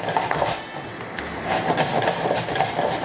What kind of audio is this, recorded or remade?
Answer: recorded